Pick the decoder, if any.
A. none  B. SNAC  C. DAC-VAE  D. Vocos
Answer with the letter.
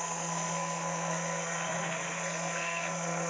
B